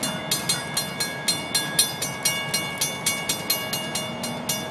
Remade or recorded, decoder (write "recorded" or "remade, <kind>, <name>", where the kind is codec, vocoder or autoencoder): recorded